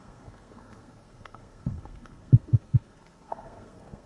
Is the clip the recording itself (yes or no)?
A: no